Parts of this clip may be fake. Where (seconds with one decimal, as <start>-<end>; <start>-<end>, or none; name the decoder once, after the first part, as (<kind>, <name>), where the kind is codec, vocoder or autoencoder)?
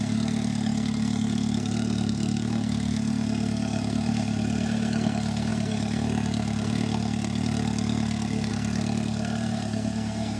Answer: 0.0-10.4 (codec, SNAC)